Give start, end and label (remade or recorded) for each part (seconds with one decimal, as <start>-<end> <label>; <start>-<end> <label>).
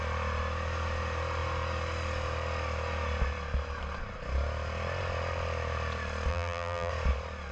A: 0.0-6.3 recorded; 6.3-6.9 remade; 6.9-7.5 recorded